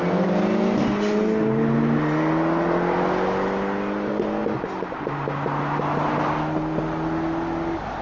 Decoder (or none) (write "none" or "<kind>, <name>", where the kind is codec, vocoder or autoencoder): none